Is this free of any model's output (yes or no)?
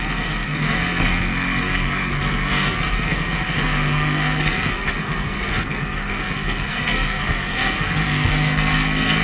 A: no